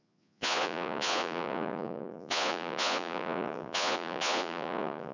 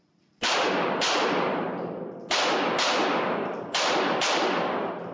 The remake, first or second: first